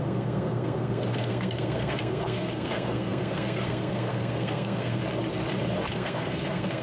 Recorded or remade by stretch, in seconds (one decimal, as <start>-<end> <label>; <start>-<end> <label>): 0.0-5.0 remade; 5.0-5.9 recorded; 5.9-6.8 remade